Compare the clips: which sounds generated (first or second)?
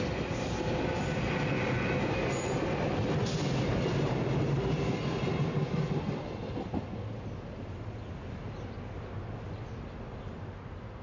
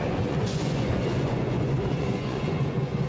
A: second